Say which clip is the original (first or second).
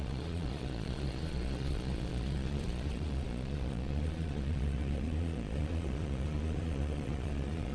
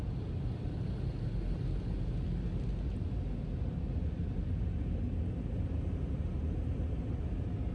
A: second